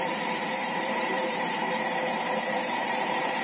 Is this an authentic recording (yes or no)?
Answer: no